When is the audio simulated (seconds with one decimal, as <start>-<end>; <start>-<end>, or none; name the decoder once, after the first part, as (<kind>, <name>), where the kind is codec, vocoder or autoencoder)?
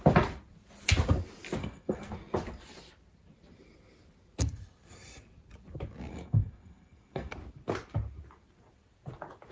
1.6-2.1 (codec, SNAC); 6.1-7.3